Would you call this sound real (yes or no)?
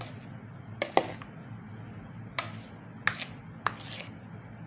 yes